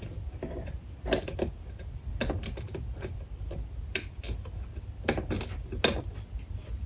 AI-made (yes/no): no